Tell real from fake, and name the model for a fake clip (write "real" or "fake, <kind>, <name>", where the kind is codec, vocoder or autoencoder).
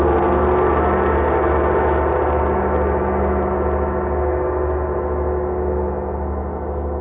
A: real